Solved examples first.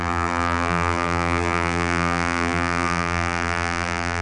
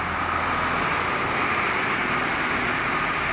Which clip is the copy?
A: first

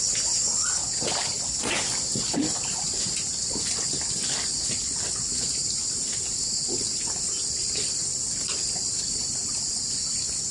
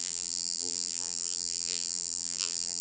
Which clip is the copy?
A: second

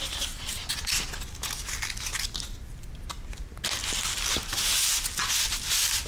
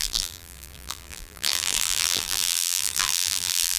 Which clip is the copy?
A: second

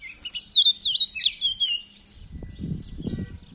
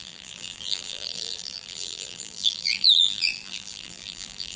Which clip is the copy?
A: second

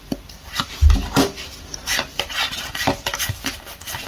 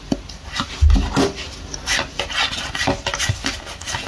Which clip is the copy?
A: first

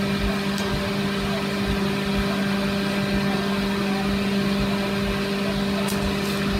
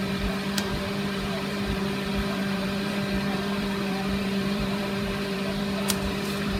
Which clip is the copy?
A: second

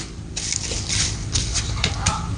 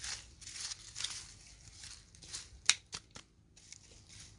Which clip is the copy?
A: first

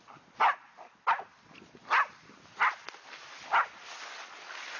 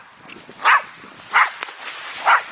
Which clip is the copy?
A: first